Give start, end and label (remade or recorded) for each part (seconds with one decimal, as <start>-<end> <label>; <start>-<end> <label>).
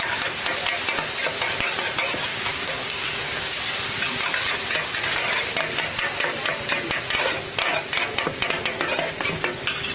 0.0-2.3 recorded; 2.3-3.6 remade; 3.6-9.9 recorded